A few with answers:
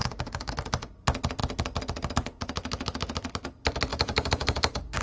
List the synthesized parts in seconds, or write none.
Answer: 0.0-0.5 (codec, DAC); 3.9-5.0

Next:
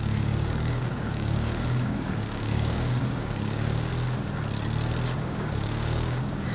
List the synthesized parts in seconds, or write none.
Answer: 0.0-3.9 (codec, DAC); 5.2-6.5

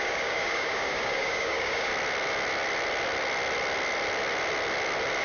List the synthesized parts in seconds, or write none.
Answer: 0.0-1.9 (codec, DAC)

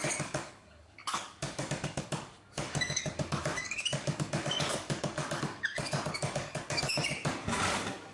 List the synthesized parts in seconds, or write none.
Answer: 0.0-8.1 (codec, DAC)

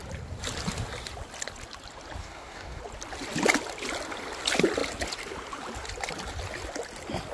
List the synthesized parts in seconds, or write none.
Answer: 2.2-2.8 (codec, DAC)

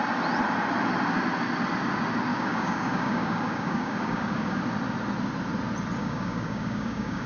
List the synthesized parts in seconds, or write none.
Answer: 2.3-4.6 (codec, DAC); 6.0-7.3

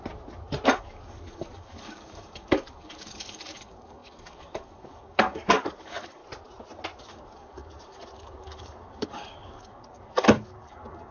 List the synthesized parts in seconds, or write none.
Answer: 0.7-6.2 (codec, DAC); 7.0-11.1

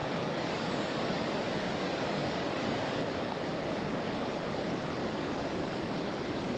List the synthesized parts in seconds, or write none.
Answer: 0.0-6.6 (codec, DAC)